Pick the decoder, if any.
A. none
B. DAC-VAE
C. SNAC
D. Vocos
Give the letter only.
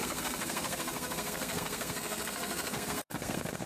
C